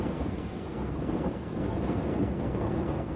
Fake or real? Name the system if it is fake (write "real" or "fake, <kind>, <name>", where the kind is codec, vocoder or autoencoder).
fake, codec, SNAC